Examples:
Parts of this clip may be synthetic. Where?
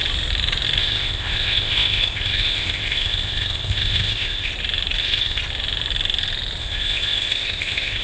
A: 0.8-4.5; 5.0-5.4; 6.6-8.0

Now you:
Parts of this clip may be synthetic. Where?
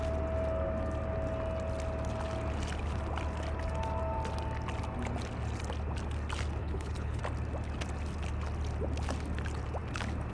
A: 6.6-7.2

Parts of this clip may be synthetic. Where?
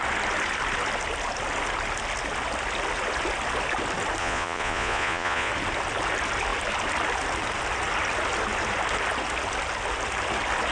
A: 4.2-5.5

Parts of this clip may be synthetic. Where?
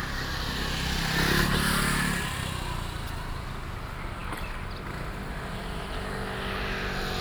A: none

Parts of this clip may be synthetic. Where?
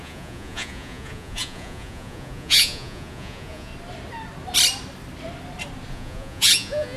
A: 0.0-3.7; 5.9-7.0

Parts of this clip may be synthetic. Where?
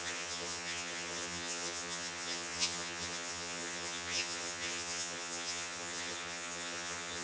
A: 0.0-7.2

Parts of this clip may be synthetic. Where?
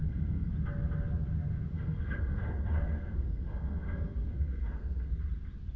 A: 0.0-0.5; 1.7-5.2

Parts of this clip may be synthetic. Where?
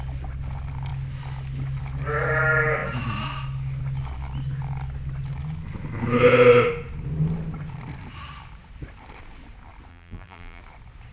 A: 9.9-10.6